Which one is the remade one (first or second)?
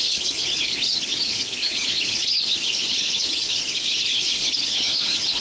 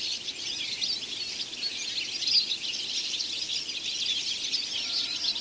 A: first